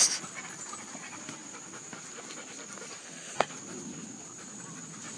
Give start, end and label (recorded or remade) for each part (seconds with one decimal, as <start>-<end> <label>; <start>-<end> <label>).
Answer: 0.0-3.0 recorded; 3.0-3.5 remade; 3.5-5.2 recorded